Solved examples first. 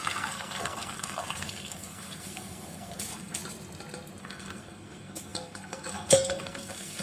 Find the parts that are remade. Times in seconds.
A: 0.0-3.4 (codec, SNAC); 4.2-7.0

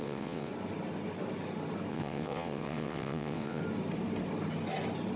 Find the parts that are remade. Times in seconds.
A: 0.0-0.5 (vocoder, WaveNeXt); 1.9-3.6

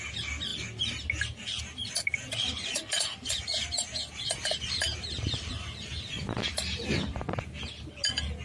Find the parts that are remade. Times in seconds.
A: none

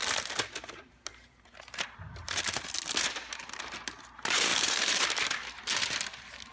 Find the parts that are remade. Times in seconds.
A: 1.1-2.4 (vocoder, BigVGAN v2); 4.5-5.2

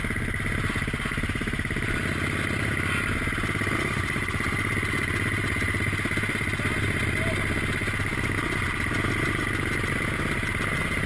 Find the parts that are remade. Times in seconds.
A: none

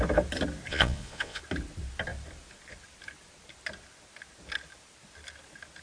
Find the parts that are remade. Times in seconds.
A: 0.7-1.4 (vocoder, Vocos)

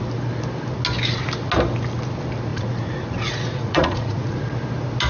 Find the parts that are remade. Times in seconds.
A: 2.5-4.4 (vocoder, Vocos)